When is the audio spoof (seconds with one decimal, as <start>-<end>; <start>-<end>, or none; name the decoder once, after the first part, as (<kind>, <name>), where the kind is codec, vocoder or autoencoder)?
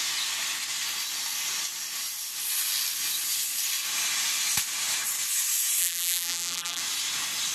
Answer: 5.8-6.8 (vocoder, BigVGAN v2)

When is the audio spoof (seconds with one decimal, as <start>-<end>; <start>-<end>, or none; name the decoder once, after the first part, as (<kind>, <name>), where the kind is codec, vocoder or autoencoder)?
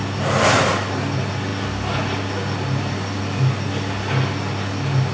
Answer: none